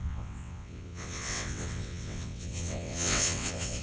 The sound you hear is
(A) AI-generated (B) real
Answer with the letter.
A